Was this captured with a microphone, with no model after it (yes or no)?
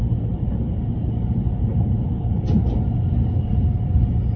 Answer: no